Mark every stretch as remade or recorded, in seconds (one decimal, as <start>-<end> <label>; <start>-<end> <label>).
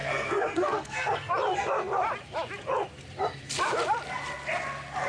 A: 0.0-1.3 remade; 1.3-5.1 recorded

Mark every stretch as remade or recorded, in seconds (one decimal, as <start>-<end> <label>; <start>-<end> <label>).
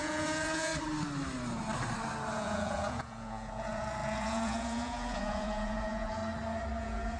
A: 0.0-0.7 remade; 0.7-2.3 recorded; 2.3-6.2 remade; 6.2-6.8 recorded; 6.8-7.2 remade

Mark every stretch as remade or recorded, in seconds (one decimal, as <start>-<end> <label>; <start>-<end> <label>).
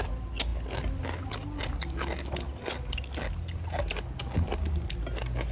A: 0.0-5.5 recorded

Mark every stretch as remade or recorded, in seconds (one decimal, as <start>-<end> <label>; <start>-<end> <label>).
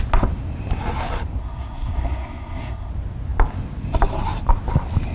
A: 0.0-1.4 recorded; 1.4-2.9 remade; 2.9-5.1 recorded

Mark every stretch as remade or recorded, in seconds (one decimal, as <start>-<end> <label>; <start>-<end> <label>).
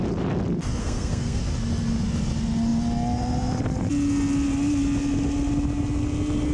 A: 0.0-0.8 recorded; 0.8-1.4 remade; 1.4-6.5 recorded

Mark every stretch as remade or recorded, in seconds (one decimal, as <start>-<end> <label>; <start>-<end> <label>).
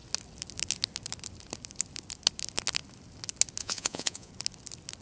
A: 0.0-3.6 recorded; 3.6-4.3 remade; 4.3-5.0 recorded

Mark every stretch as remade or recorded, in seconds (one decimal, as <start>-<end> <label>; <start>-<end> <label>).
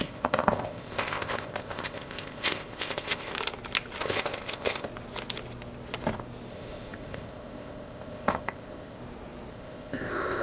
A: 0.0-3.3 remade; 3.3-4.0 recorded; 4.0-4.9 remade; 4.9-6.5 recorded; 6.5-9.0 remade; 9.0-9.5 recorded; 9.5-10.4 remade